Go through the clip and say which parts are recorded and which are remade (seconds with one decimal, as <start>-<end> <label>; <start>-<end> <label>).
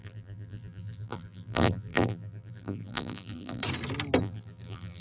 0.0-3.6 remade; 3.6-4.2 recorded; 4.2-5.0 remade